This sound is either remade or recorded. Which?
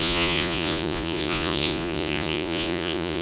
remade